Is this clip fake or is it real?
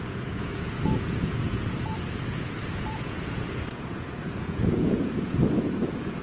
fake